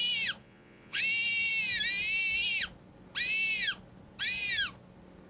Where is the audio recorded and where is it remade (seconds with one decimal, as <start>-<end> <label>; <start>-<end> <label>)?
0.0-0.4 recorded; 0.4-1.0 remade; 1.0-5.3 recorded